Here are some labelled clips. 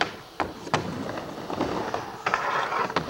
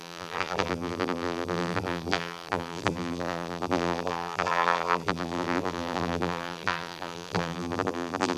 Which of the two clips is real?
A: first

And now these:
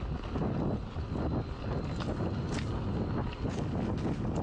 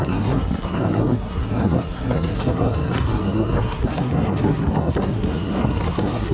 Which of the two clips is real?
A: first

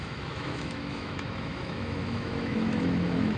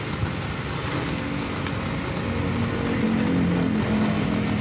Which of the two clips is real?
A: second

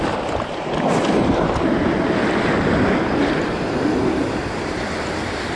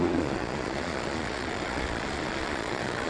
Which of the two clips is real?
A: first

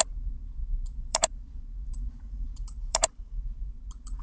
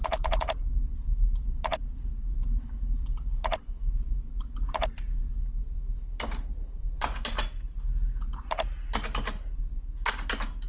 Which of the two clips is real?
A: second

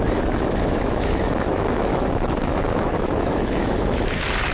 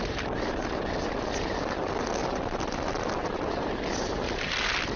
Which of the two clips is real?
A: second